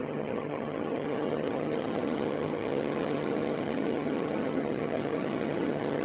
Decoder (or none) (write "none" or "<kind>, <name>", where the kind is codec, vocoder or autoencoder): vocoder, HiFi-GAN